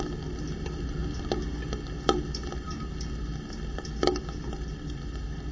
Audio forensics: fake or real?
real